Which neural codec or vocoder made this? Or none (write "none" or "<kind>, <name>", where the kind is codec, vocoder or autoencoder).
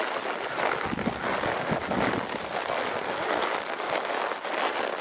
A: none